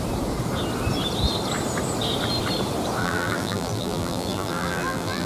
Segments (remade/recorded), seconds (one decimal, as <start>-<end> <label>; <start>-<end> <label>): 0.0-3.0 recorded; 3.0-5.3 remade